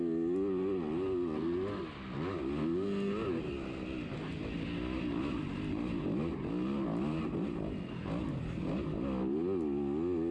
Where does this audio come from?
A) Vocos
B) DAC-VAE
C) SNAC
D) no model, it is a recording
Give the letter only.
D